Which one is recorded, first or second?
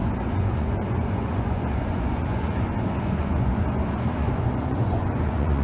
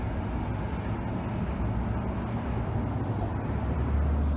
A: second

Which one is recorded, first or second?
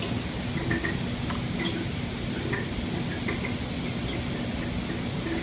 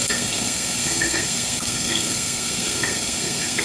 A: first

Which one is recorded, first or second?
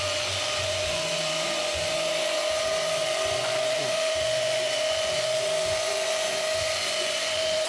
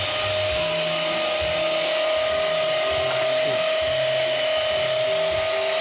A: second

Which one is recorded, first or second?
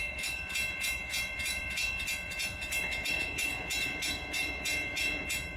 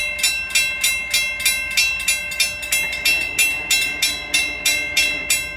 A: second